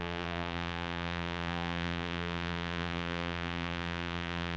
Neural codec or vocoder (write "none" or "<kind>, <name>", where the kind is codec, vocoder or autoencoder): vocoder, BigVGAN v2